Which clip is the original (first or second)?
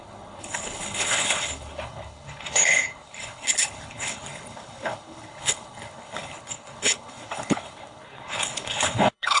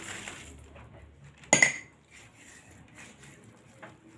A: second